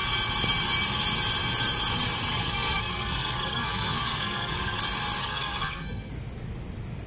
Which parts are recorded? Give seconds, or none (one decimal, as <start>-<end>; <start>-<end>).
0.0-2.3; 4.8-5.2; 6.1-7.1